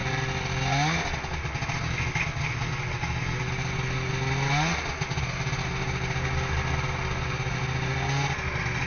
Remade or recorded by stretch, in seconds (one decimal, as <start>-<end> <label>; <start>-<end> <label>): 0.0-8.9 recorded

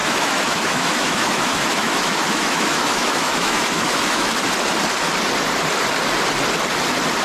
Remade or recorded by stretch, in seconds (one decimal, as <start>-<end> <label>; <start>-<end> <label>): 0.0-4.3 remade; 4.3-7.2 recorded

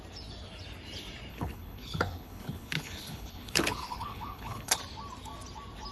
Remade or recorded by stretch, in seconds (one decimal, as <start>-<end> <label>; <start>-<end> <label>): 0.0-1.3 recorded; 1.3-4.8 remade; 4.8-5.9 recorded

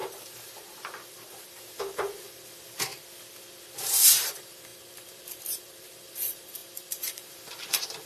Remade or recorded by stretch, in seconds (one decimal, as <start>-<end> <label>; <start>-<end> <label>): 0.0-2.9 remade; 2.9-3.7 recorded; 3.7-8.1 remade

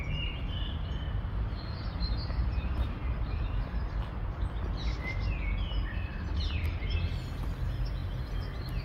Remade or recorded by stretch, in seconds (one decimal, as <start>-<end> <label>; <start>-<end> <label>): 0.0-8.8 recorded

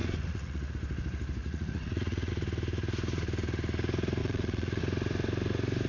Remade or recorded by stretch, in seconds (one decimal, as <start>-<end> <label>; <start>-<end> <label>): 0.0-0.7 remade; 0.7-1.4 recorded; 1.4-2.3 remade; 2.3-4.2 recorded; 4.2-4.8 remade; 4.8-5.9 recorded

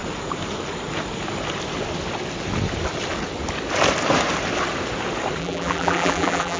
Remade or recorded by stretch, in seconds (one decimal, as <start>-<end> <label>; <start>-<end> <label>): 0.0-5.4 recorded; 5.4-6.6 remade